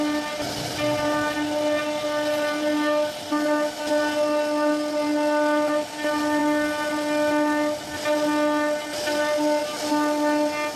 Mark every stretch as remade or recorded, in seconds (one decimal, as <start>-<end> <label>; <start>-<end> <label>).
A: 0.0-10.8 recorded